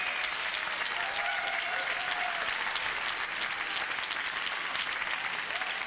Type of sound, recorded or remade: recorded